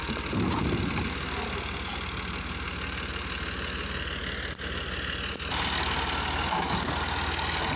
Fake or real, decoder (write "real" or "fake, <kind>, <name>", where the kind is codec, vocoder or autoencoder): real